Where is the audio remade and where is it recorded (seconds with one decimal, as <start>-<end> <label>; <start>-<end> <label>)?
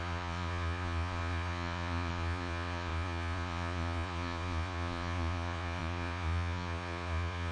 0.0-7.5 remade